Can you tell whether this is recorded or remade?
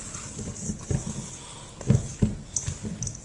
recorded